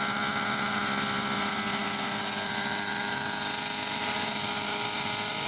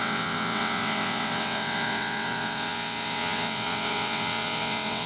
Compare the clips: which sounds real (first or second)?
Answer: first